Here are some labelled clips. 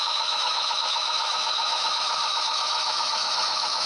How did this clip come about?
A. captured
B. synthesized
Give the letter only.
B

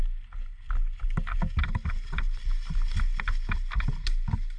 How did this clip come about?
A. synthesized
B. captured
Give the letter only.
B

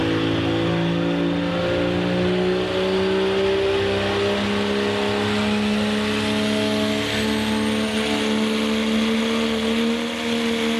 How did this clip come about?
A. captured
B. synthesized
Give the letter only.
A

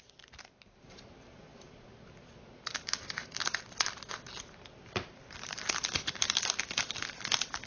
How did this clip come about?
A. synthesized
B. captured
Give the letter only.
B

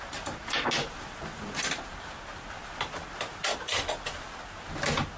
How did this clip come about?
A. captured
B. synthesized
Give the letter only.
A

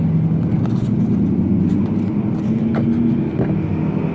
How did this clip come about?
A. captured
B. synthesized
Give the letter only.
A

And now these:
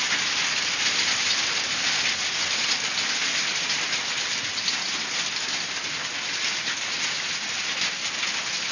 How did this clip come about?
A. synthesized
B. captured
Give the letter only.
B